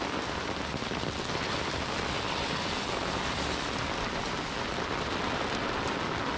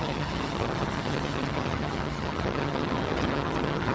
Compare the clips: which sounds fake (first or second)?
second